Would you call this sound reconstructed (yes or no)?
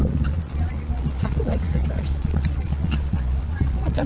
yes